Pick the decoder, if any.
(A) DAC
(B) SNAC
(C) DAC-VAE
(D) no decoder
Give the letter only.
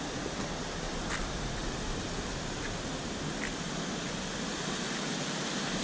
D